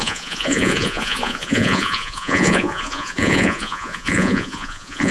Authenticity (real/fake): fake